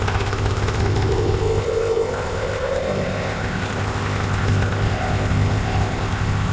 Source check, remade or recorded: remade